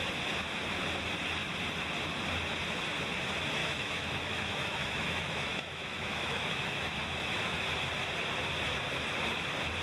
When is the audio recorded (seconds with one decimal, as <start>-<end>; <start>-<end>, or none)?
0.0-3.6; 7.7-9.8